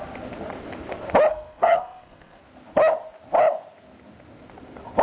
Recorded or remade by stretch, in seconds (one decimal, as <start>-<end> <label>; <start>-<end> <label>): 0.0-1.3 recorded; 1.3-2.4 remade; 2.4-5.0 recorded